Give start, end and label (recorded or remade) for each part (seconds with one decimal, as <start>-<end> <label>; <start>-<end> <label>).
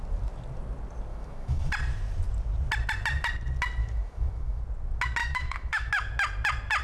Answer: 0.0-1.1 recorded; 1.1-1.7 remade; 1.7-3.8 recorded; 3.8-4.6 remade; 4.6-5.2 recorded; 5.2-5.9 remade; 5.9-6.8 recorded